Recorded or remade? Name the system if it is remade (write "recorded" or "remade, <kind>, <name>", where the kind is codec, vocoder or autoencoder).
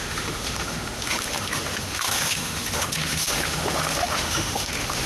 remade, autoencoder, DAC-VAE